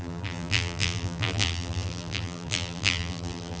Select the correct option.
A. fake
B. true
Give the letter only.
A